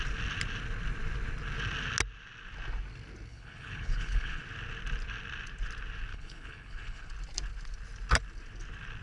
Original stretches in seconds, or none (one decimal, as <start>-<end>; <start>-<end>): 0.0-3.3; 4.4-6.1; 7.1-9.0